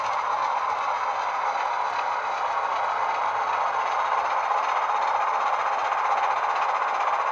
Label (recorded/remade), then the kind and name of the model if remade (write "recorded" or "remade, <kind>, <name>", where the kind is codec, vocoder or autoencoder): recorded